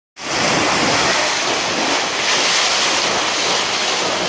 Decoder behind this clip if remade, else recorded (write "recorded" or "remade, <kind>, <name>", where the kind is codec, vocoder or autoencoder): recorded